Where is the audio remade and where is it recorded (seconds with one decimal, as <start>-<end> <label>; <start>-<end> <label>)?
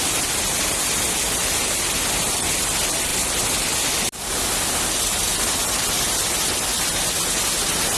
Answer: 0.0-8.0 recorded